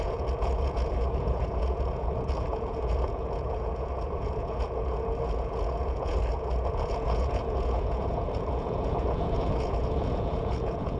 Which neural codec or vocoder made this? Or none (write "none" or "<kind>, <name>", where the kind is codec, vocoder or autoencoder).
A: vocoder, Vocos